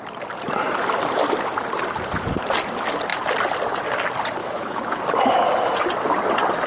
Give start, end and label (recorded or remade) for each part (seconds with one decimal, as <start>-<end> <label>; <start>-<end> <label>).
0.0-4.4 recorded; 4.4-5.0 remade; 5.0-6.7 recorded